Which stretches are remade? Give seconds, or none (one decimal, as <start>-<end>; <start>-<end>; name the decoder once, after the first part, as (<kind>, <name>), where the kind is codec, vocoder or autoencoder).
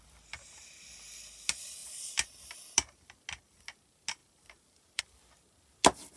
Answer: 1.8-2.6 (vocoder, BigVGAN v2); 4.2-5.0